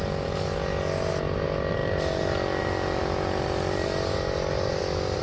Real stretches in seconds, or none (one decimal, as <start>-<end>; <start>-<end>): 0.0-5.2